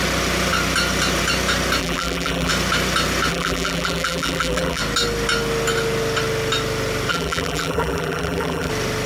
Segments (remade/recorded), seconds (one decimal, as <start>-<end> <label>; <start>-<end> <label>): 0.0-1.8 recorded; 1.8-2.5 remade; 2.5-3.3 recorded; 3.3-4.8 remade; 4.8-7.1 recorded; 7.1-8.7 remade; 8.7-9.1 recorded